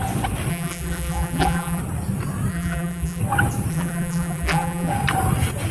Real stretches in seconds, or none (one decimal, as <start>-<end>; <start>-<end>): 0.0-0.5; 1.8-2.5; 3.2-3.7; 4.9-5.7